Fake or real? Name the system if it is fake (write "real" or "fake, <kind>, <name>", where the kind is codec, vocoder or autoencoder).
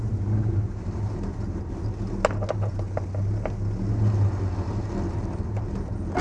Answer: real